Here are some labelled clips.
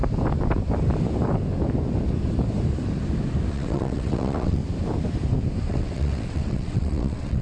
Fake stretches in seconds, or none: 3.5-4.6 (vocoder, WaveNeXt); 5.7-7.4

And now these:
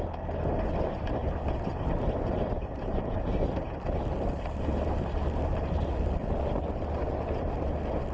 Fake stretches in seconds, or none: none

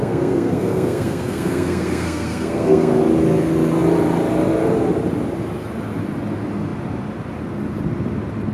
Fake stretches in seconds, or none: 0.0-3.0 (codec, SNAC)

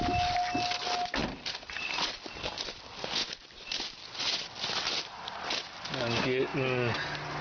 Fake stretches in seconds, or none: 1.2-2.8 (vocoder, BigVGAN v2); 3.2-4.1

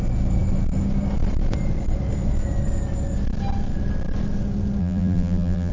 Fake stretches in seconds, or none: 4.8-5.7 (vocoder, BigVGAN v2)

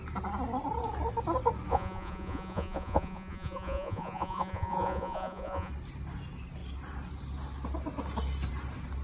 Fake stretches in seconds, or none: 1.7-5.7 (vocoder, Vocos)

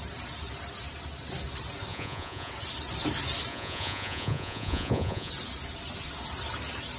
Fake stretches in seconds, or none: 1.9-2.5 (vocoder, Vocos); 3.5-5.3